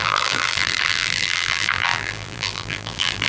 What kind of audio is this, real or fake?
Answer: fake